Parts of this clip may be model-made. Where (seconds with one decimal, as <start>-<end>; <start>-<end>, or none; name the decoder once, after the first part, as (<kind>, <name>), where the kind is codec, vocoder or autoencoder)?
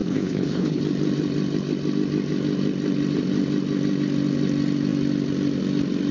0.0-0.8 (codec, HILCodec)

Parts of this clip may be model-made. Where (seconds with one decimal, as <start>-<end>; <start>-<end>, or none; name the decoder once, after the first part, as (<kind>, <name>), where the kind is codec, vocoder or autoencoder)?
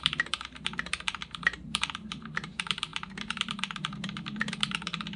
0.0-5.2 (vocoder, BigVGAN v2)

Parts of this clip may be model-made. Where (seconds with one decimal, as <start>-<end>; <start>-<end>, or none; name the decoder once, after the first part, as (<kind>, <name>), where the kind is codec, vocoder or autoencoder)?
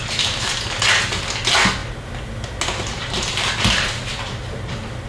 none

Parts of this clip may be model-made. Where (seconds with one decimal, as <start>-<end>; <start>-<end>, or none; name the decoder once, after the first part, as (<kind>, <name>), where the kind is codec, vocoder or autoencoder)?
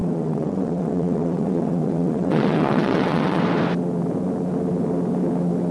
0.0-3.4 (vocoder, WaveNeXt)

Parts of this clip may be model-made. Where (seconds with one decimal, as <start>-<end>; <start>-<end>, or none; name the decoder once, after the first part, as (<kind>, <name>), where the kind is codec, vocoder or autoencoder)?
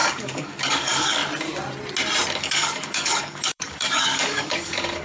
0.0-1.2 (codec, DAC); 2.3-5.0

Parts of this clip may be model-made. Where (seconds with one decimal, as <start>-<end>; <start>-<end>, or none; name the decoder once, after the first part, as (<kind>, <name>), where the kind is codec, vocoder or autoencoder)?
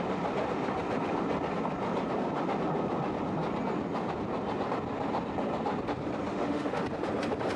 6.3-6.8 (autoencoder, DAC-VAE)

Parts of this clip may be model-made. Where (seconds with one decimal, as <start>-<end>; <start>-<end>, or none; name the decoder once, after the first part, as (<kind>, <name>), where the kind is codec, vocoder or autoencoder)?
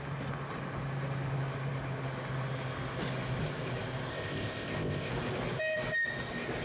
4.1-5.1 (codec, ZipCodec)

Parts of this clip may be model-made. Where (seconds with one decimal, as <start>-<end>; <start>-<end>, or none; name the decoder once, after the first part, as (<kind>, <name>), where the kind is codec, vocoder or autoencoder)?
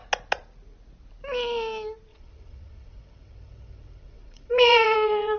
2.1-5.4 (vocoder, WaveNeXt)